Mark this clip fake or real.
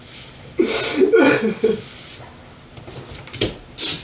real